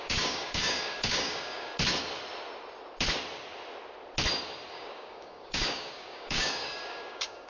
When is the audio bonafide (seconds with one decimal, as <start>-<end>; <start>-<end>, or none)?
1.7-4.7